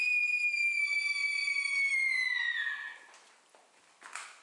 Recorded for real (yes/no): yes